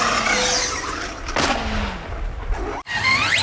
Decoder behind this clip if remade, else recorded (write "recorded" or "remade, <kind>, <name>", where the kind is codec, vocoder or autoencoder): recorded